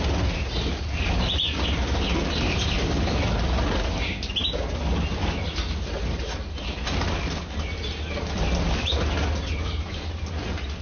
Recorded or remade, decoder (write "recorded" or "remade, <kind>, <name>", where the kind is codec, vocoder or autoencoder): recorded